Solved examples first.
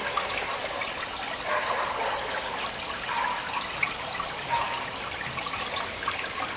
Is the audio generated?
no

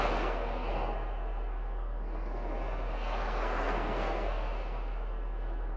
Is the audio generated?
yes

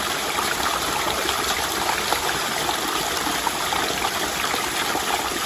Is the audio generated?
no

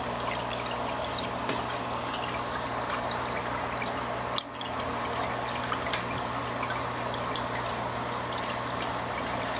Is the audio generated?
no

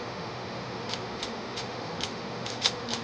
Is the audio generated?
yes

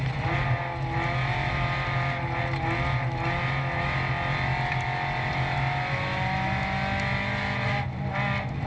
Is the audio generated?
no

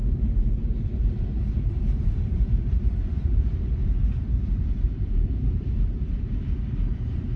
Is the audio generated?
yes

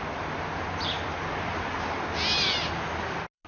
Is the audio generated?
no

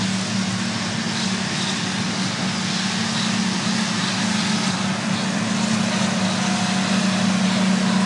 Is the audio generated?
no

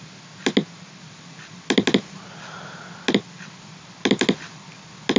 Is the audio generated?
no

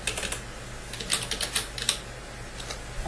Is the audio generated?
no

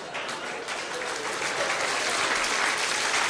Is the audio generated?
no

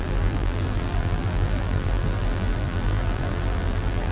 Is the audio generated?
yes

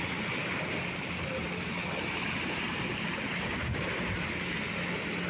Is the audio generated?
no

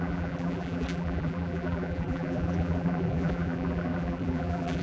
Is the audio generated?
yes